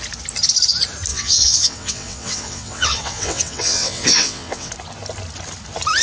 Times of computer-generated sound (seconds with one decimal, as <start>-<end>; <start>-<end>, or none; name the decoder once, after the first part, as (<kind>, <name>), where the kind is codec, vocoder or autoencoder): 1.1-4.7 (vocoder, WaveNeXt)